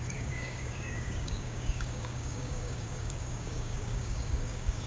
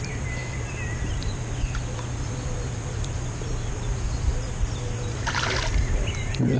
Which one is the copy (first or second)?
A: first